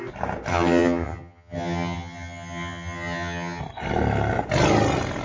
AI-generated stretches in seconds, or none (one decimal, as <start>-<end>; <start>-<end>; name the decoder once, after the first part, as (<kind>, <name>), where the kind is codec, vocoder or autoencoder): 0.5-3.6 (vocoder, HiFi-GAN)